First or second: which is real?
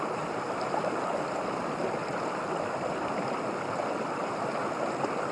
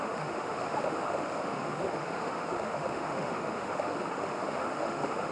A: first